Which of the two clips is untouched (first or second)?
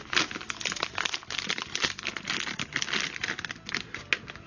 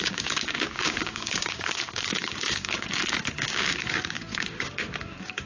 first